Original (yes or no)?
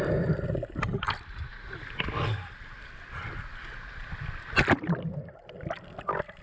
yes